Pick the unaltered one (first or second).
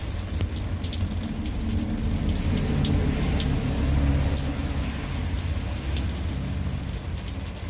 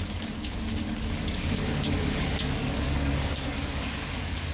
first